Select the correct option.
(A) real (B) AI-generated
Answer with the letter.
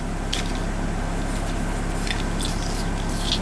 A